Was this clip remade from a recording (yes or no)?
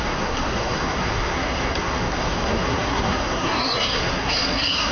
yes